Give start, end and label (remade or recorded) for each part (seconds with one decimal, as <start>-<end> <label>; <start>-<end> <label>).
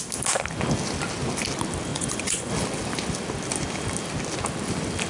0.0-1.9 recorded; 1.9-2.5 remade; 2.5-5.1 recorded